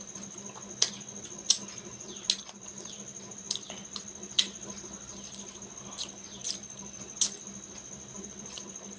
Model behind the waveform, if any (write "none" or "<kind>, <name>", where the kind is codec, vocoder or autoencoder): none